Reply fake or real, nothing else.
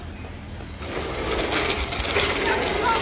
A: real